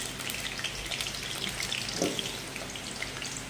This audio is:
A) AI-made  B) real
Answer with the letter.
B